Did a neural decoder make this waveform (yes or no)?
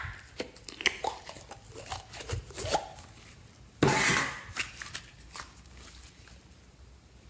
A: no